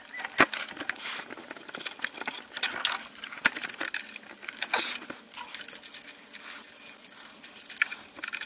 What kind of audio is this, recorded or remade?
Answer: recorded